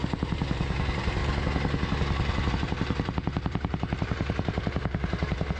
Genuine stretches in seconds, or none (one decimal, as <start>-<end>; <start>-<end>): 1.2-2.5